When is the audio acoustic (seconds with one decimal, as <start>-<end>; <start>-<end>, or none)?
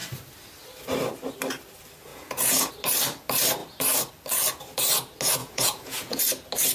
0.0-2.1; 2.7-5.4; 6.2-6.7